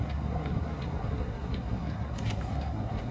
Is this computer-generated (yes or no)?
yes